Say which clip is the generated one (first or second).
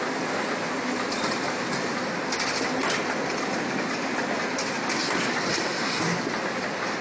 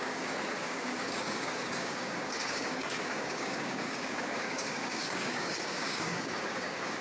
second